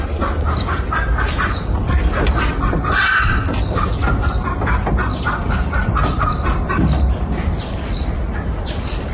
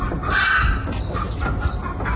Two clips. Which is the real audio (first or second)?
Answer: second